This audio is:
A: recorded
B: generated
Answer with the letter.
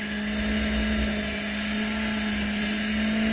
A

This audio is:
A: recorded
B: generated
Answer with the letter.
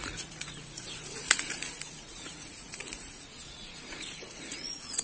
B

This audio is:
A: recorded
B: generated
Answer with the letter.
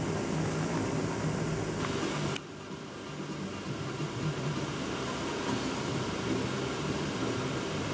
A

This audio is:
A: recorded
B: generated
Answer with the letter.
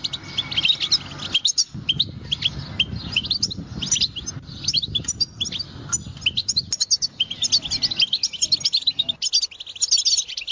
A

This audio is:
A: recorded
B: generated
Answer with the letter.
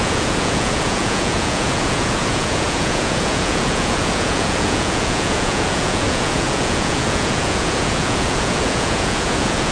B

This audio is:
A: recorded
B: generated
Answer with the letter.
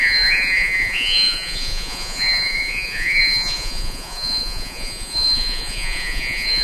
B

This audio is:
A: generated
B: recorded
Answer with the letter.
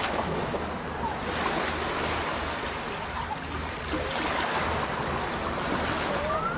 B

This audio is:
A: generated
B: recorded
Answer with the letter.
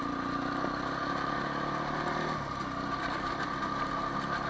B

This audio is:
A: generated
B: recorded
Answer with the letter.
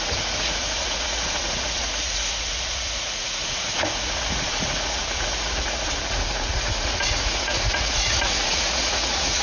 A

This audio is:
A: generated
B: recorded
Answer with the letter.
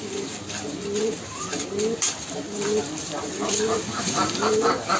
B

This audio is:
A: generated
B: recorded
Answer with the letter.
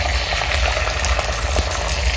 B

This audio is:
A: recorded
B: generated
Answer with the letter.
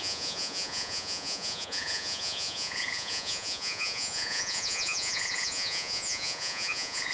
B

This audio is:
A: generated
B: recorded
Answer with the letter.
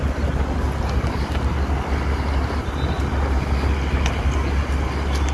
B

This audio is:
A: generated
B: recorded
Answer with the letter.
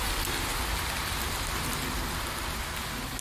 B